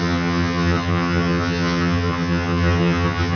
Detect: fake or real fake